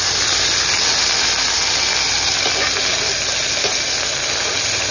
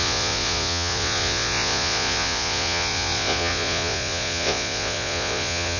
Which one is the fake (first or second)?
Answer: second